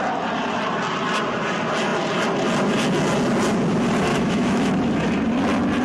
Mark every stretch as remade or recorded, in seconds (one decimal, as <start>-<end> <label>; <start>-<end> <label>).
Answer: 0.0-4.1 recorded; 4.1-4.7 remade; 4.7-5.8 recorded